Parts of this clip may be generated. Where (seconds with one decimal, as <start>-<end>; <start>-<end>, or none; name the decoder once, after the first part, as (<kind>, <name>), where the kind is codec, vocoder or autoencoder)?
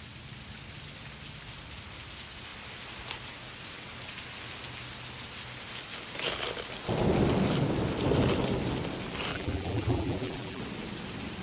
9.3-10.6 (vocoder, BigVGAN v2)